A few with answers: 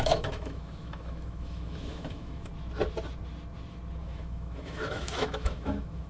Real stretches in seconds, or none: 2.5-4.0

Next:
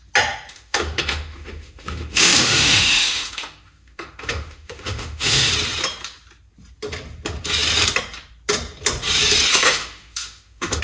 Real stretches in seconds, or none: 0.0-0.5; 5.5-9.5